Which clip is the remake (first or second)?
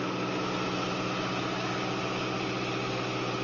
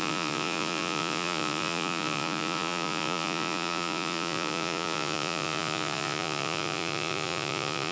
second